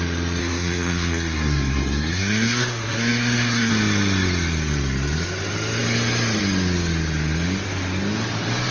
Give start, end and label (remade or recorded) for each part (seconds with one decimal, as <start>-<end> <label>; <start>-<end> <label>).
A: 0.0-0.4 recorded; 0.4-3.7 remade; 3.7-8.7 recorded